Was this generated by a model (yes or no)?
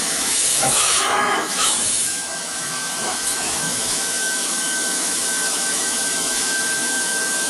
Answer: yes